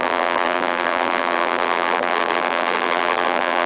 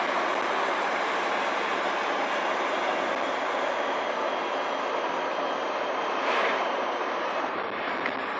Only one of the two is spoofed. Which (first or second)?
first